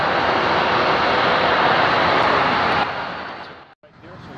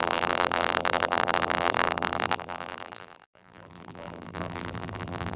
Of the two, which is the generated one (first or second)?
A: second